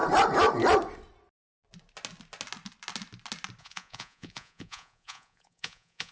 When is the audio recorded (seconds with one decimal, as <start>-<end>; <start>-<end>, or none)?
0.0-3.6